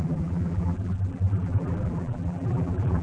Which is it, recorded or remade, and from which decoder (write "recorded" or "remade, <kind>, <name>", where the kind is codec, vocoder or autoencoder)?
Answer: remade, vocoder, BigVGAN v2